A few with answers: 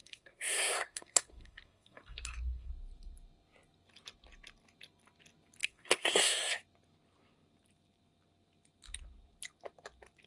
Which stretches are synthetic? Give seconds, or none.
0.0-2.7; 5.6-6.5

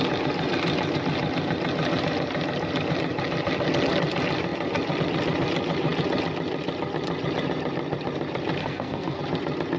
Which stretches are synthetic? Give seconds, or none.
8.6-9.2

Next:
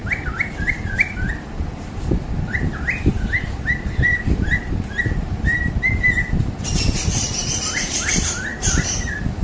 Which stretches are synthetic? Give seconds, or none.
0.6-9.4

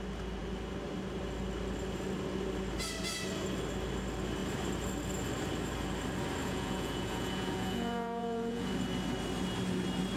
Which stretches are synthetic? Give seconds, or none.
6.4-8.7